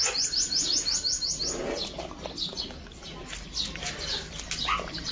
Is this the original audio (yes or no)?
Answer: yes